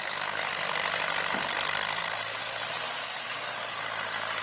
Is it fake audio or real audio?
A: real